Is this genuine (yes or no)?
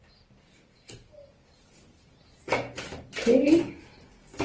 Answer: yes